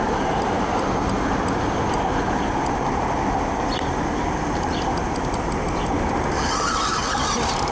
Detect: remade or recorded recorded